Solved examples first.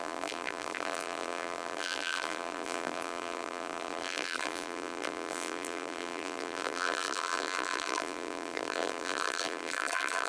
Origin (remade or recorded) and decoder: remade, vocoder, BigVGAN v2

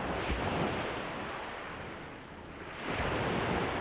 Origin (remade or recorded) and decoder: recorded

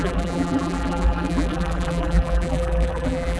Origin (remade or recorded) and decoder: remade, vocoder, BigVGAN v2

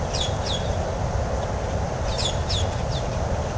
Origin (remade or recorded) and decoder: recorded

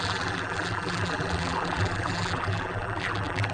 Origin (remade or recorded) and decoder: remade, vocoder, BigVGAN v2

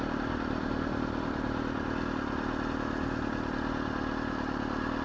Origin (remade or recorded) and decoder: recorded